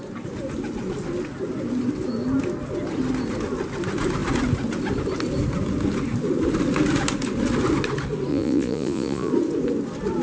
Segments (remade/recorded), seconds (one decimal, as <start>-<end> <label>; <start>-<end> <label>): 0.0-8.3 recorded; 8.3-9.3 remade; 9.3-10.2 recorded